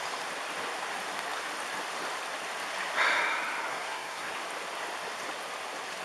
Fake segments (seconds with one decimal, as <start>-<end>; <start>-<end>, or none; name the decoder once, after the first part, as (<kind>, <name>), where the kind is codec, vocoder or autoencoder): 3.7-4.3 (codec, SNAC)